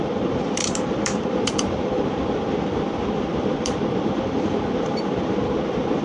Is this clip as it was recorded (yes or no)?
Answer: no